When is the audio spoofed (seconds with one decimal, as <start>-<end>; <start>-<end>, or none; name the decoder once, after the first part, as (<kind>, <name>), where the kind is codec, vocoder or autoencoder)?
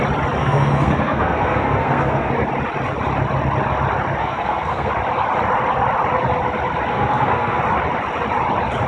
0.4-2.3 (codec, SNAC); 4.2-4.9; 6.9-7.6